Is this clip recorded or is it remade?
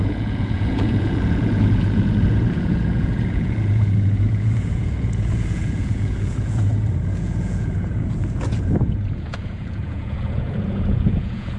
remade